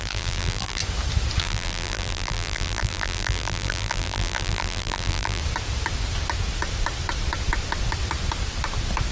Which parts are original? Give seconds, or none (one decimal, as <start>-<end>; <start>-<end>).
0.8-1.4; 5.4-9.1

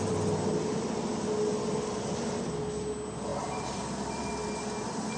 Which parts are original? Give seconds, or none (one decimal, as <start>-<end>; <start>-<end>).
0.0-3.3; 4.3-5.2

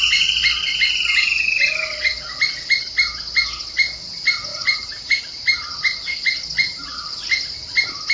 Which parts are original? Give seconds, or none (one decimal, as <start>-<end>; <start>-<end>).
0.0-4.5; 5.2-8.1

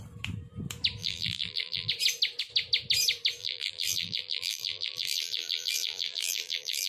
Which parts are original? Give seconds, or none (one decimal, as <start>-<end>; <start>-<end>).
0.0-1.0; 1.9-3.4